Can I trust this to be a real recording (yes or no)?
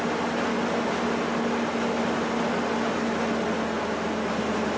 yes